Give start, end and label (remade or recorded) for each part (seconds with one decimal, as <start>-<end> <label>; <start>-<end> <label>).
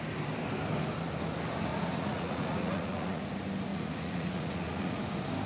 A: 0.0-1.7 recorded; 1.7-3.2 remade; 3.2-3.7 recorded; 3.7-5.0 remade; 5.0-5.5 recorded